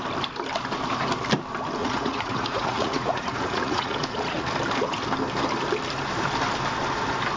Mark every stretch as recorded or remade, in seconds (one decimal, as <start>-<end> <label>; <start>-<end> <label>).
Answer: 0.0-1.8 recorded; 1.8-4.5 remade; 4.5-7.4 recorded